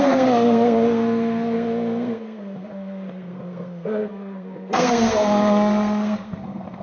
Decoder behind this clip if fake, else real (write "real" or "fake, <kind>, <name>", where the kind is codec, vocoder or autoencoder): fake, codec, SNAC